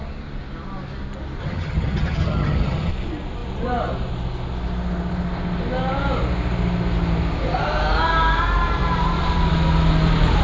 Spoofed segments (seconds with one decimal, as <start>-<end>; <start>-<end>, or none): 1.4-2.9